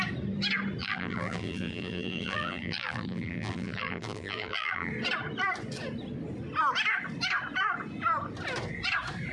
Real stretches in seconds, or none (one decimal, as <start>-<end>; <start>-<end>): 0.0-0.8; 4.9-9.3